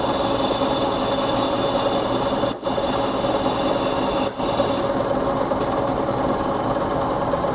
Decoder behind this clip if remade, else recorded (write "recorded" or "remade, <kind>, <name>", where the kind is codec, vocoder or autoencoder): recorded